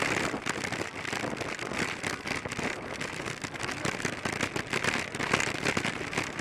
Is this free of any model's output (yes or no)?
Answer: yes